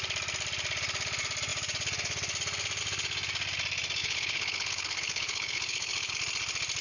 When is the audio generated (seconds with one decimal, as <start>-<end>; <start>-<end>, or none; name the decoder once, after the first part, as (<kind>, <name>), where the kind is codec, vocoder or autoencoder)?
4.0-6.1 (codec, HILCodec)